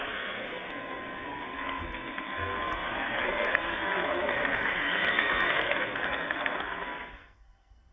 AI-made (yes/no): yes